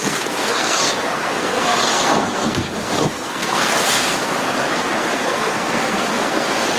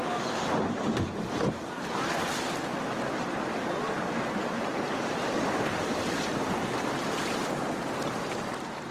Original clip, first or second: second